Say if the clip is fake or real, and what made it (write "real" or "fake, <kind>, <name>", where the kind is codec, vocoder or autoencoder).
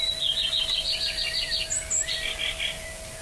real